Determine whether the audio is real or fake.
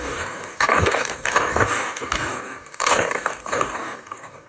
fake